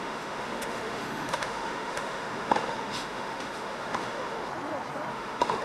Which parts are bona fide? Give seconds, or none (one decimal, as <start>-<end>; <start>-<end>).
4.5-5.1